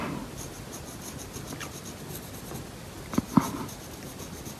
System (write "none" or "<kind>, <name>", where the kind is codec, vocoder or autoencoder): none